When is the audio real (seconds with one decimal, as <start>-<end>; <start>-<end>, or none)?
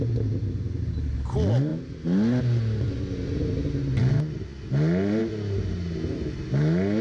0.0-7.0